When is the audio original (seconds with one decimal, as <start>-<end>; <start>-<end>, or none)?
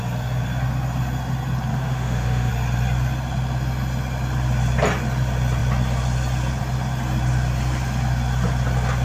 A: 0.0-1.7; 2.5-9.0